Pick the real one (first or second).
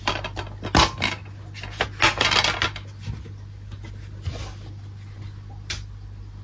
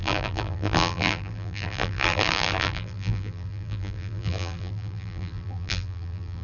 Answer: first